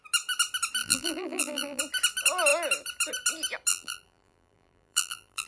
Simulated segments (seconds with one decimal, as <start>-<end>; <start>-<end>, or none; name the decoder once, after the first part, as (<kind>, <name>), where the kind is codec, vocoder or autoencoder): 0.8-1.8 (vocoder, BigVGAN v2); 3.7-5.5